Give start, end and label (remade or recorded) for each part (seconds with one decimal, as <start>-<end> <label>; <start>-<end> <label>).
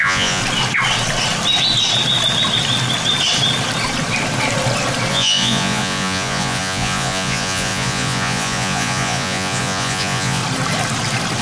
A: 0.0-0.4 remade; 0.4-5.1 recorded; 5.1-10.4 remade; 10.4-11.4 recorded